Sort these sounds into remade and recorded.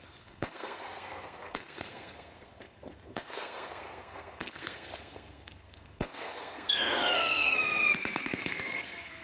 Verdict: remade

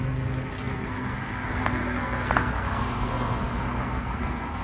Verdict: remade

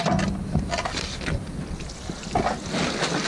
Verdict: recorded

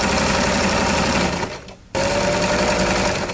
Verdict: recorded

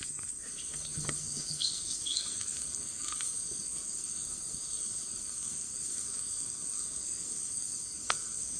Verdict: remade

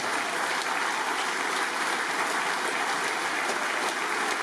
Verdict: recorded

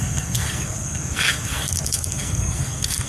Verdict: remade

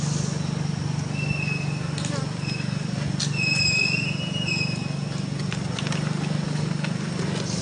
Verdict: recorded